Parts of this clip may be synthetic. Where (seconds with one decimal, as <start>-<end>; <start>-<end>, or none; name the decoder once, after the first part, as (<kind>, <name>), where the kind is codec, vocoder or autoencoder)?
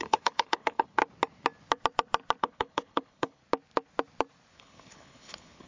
0.0-1.0 (codec, HILCodec); 2.4-3.4; 4.5-5.7